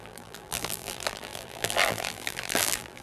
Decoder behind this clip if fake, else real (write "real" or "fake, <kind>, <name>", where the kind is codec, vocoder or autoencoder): fake, vocoder, BigVGAN v2